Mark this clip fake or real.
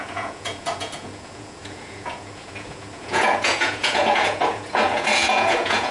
fake